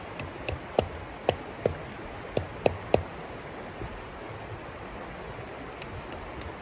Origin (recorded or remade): recorded